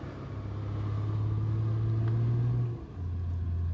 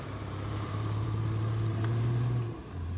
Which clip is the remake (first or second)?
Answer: second